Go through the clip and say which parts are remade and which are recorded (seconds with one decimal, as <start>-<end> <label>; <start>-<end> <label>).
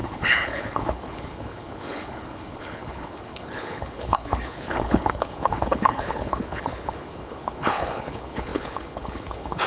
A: 0.0-9.7 remade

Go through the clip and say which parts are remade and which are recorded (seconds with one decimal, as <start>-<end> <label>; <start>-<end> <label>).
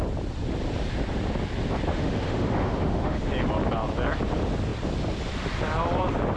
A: 0.0-1.9 recorded; 1.9-3.3 remade; 3.3-6.4 recorded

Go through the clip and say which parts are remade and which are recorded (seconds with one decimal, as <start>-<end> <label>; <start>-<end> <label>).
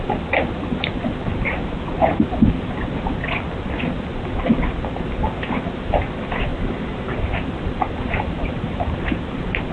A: 0.0-6.5 recorded; 6.5-9.7 remade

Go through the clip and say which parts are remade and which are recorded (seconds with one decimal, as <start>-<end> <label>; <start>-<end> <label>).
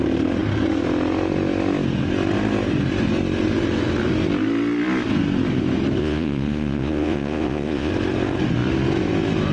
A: 0.0-6.0 recorded; 6.0-7.9 remade; 7.9-9.5 recorded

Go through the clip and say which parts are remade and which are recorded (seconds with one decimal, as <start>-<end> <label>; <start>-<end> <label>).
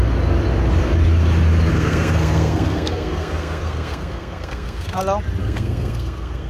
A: 0.0-1.7 recorded; 1.7-5.0 remade; 5.0-5.4 recorded; 5.4-6.5 remade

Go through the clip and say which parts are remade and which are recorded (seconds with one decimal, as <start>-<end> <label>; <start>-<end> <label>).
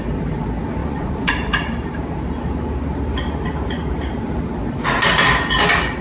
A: 0.0-0.8 recorded; 0.8-1.3 remade; 1.3-6.0 recorded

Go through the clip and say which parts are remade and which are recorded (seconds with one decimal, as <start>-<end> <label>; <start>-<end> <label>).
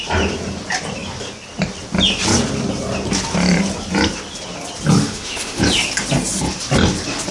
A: 0.0-5.0 recorded; 5.0-5.6 remade; 5.6-7.3 recorded